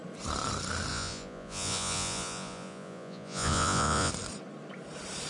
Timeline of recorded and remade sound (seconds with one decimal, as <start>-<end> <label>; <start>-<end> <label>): 0.0-0.9 recorded; 0.9-4.1 remade; 4.1-5.3 recorded